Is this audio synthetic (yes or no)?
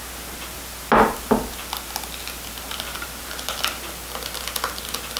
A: no